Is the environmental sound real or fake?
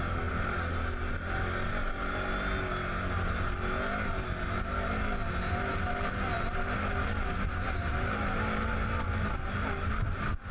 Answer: real